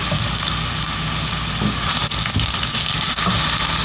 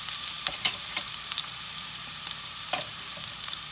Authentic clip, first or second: first